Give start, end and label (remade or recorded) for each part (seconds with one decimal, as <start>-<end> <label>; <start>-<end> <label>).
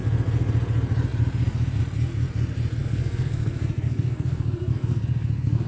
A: 0.0-2.8 recorded; 2.8-5.7 remade